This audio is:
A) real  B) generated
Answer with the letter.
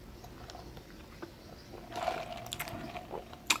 A